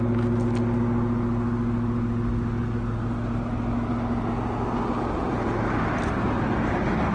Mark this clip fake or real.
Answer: real